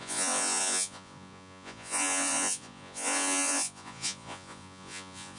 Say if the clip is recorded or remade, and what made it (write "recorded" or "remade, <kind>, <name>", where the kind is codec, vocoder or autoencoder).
remade, vocoder, Vocos